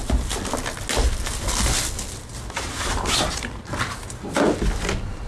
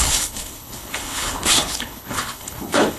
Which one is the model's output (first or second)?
second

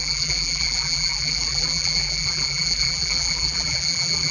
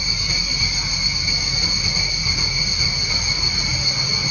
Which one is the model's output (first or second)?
first